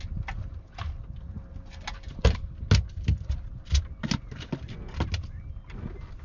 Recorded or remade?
recorded